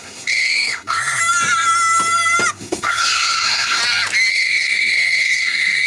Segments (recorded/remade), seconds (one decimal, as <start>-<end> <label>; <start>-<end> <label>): 0.0-1.2 remade; 1.2-2.5 recorded; 2.5-3.8 remade; 3.8-4.3 recorded; 4.3-5.9 remade